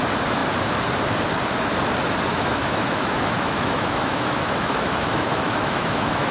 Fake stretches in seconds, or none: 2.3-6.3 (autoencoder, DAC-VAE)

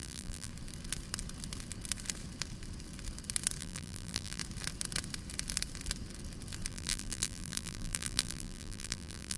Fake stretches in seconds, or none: 0.0-0.5 (vocoder, BigVGAN v2); 3.6-4.4; 6.7-9.4

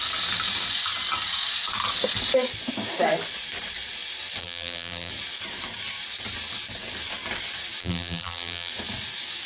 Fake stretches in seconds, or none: 4.4-5.1 (vocoder, BigVGAN v2); 7.8-8.7

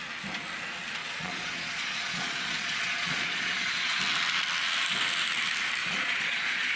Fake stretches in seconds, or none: 1.0-4.0 (vocoder, Vocos); 5.8-6.8

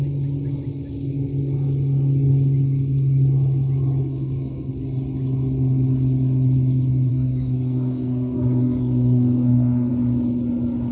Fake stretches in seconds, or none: 4.0-4.7 (codec, SNAC); 7.1-9.9

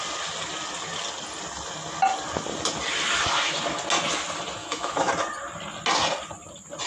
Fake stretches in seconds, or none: 4.6-5.1 (autoencoder, DAC-VAE)